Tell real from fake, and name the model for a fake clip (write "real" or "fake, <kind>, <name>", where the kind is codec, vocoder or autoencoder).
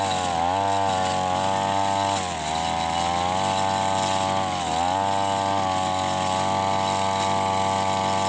real